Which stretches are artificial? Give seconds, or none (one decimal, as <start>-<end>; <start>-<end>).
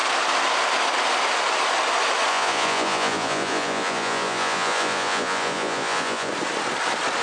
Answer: 2.3-6.3